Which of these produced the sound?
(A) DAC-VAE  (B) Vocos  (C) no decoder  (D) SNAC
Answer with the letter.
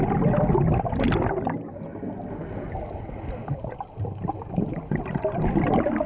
C